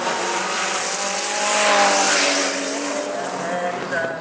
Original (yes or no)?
yes